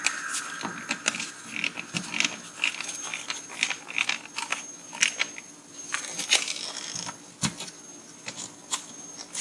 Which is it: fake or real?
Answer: real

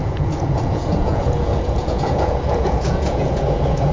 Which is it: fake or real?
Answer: fake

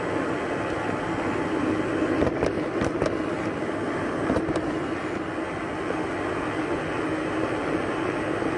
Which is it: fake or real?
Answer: real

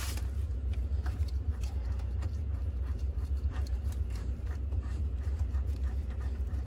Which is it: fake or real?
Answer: fake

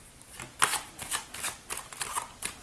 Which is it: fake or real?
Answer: real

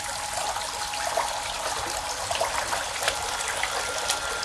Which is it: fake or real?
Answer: real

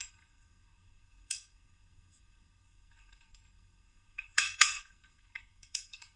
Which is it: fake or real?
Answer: fake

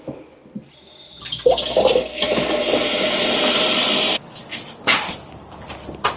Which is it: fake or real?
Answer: real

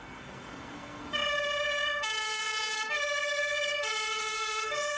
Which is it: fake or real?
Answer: fake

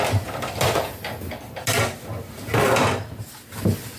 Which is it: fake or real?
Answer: real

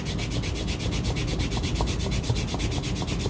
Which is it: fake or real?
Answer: real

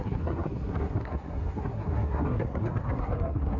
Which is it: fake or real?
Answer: fake